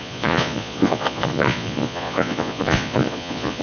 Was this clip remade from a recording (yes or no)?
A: yes